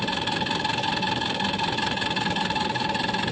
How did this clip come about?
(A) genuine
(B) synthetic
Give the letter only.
A